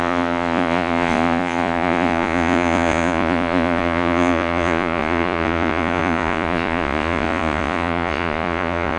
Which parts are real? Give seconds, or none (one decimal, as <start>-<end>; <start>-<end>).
none